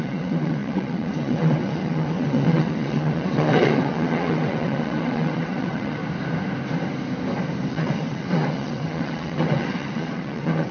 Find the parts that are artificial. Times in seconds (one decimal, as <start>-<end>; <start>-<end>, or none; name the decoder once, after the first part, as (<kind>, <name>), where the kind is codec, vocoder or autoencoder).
0.0-6.0 (vocoder, WaveNeXt); 7.7-10.7